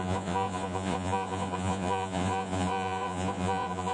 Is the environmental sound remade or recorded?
remade